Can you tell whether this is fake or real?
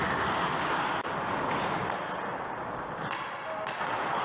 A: real